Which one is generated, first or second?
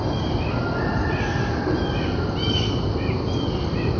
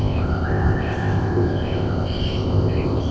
second